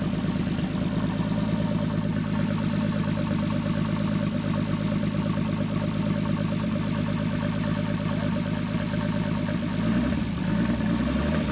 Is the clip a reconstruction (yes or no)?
no